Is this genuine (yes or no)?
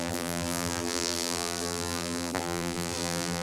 no